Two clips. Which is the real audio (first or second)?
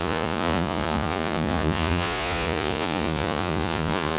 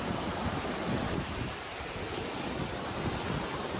second